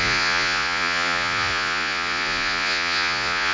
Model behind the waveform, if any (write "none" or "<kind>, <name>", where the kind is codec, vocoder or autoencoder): vocoder, Vocos